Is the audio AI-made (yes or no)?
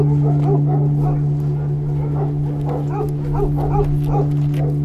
no